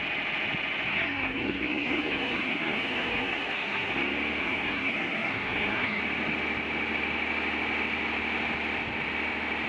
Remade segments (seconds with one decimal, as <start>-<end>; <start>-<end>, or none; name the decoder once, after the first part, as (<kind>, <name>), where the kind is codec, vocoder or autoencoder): 0.9-3.9 (codec, SNAC); 4.4-6.0